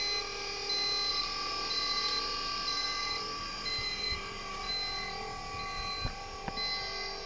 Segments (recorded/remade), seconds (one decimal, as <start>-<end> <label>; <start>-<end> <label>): 0.0-1.1 recorded; 1.1-4.7 remade; 4.7-7.3 recorded